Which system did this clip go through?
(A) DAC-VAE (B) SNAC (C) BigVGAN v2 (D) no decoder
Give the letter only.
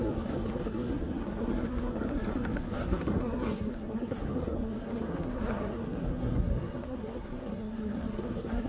B